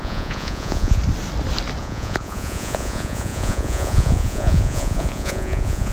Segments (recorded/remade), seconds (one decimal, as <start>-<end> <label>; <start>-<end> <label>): 0.0-1.0 remade; 1.0-1.8 recorded; 1.8-5.9 remade